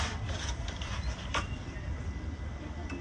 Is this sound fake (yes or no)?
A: yes